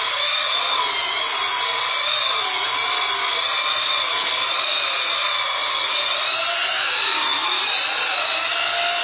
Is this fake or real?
real